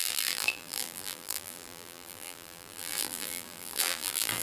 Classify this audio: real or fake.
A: fake